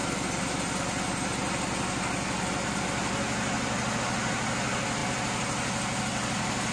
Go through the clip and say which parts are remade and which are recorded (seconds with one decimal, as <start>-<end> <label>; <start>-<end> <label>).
0.0-6.7 recorded